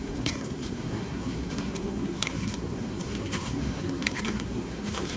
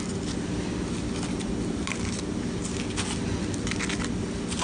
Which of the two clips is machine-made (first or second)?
first